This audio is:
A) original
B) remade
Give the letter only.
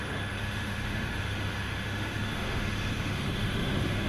B